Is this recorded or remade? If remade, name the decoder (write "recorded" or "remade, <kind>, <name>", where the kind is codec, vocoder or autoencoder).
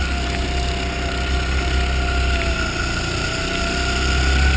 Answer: recorded